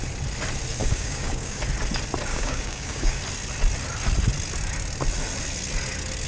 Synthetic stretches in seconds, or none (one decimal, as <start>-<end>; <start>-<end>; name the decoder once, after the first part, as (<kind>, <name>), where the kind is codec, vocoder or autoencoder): 0.8-1.6 (codec, DAC); 2.3-3.2